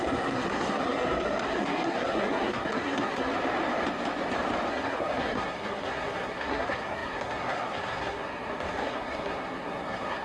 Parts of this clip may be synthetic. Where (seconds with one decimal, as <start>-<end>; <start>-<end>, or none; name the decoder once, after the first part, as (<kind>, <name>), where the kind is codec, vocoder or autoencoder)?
0.0-3.3 (codec, SNAC); 4.7-10.2